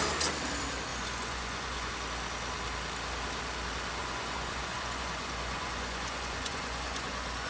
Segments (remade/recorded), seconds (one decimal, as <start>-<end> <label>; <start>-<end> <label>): 0.0-0.9 recorded; 0.9-1.9 remade; 1.9-4.0 recorded; 4.0-7.5 remade

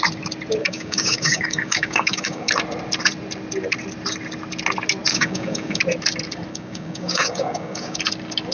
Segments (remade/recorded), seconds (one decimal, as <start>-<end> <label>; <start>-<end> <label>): 0.0-0.6 recorded; 0.6-2.5 remade; 2.5-5.1 recorded; 5.1-5.8 remade; 5.8-6.5 recorded; 6.5-8.0 remade; 8.0-8.5 recorded

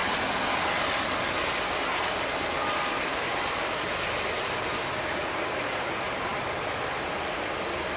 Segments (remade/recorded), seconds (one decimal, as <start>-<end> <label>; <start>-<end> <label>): 0.0-8.0 recorded